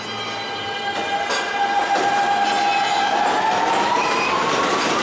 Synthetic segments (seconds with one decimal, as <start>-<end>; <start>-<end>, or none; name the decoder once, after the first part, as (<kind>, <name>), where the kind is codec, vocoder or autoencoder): none